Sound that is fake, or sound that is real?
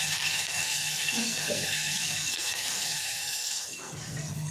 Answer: fake